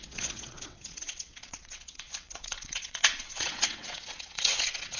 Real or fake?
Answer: fake